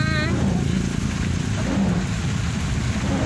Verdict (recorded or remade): recorded